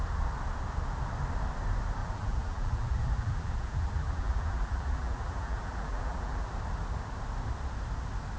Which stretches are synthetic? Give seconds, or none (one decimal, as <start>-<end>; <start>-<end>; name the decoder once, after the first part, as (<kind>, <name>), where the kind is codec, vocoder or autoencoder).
2.0-6.5 (vocoder, BigVGAN v2)